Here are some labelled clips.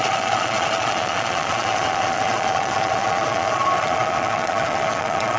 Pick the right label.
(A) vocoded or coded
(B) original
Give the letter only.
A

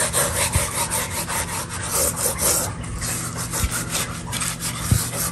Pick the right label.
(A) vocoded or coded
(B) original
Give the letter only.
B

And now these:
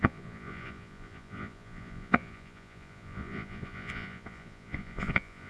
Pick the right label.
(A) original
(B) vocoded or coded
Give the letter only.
B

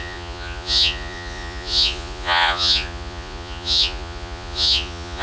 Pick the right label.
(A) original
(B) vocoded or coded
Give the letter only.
B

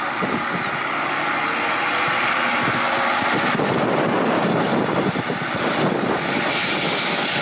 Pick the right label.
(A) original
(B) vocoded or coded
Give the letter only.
A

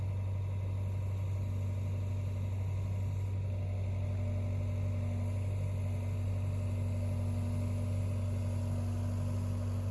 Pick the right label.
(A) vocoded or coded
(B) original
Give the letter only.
B